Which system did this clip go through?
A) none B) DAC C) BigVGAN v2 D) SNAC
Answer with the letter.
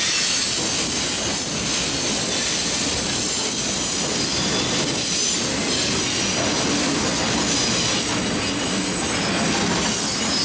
A